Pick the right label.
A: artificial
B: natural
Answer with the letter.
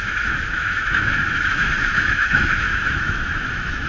A